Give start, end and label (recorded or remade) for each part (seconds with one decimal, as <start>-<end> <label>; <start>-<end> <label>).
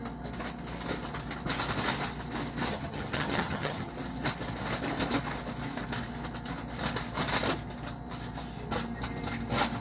0.0-2.7 recorded; 2.7-3.9 remade; 3.9-9.8 recorded